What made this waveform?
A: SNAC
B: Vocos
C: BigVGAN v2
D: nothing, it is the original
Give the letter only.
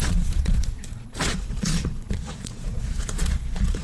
B